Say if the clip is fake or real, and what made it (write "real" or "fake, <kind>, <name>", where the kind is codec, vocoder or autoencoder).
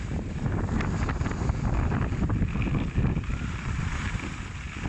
real